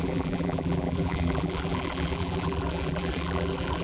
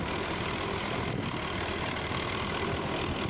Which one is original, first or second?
second